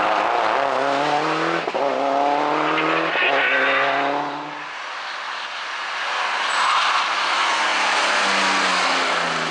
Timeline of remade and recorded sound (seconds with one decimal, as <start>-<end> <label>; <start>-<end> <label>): 0.0-9.5 recorded